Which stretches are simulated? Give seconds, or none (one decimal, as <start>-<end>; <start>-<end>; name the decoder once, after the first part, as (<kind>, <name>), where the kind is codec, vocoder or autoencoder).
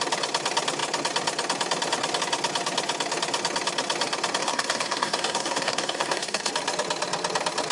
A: 4.4-6.5 (codec, SNAC)